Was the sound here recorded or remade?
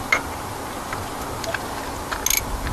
recorded